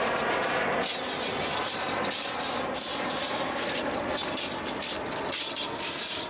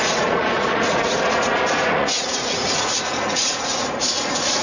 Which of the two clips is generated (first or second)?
second